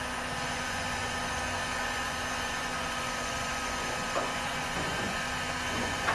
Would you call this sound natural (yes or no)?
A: no